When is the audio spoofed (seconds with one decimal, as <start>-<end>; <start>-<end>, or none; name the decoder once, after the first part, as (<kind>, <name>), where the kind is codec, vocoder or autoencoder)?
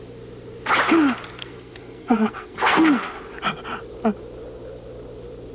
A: 1.4-3.2 (codec, SNAC)